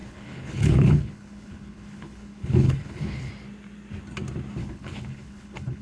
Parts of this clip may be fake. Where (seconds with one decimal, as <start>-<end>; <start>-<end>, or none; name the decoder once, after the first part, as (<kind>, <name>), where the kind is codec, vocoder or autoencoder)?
0.0-3.3 (codec, HILCodec); 4.6-5.8